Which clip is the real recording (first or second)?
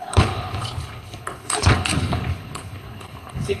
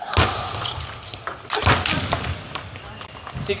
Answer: second